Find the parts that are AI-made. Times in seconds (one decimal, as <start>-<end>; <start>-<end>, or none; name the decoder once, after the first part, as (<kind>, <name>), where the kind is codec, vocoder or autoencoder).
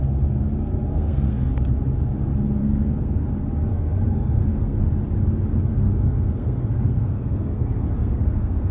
0.9-1.5 (codec, SNAC); 2.6-3.3; 3.7-4.8; 5.7-8.7